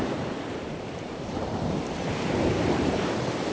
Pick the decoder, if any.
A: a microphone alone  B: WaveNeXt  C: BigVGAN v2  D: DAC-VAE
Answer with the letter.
C